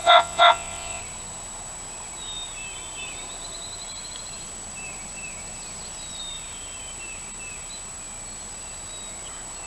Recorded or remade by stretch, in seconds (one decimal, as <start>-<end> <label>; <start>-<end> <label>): 0.0-1.0 remade; 1.0-9.7 recorded